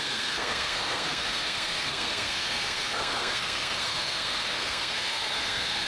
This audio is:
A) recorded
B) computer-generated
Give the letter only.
B